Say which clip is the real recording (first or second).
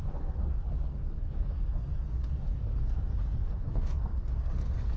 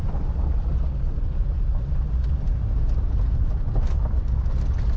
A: second